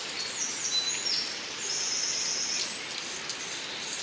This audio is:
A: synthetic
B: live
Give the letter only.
B